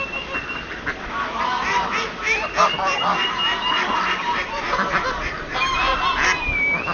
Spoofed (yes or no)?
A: no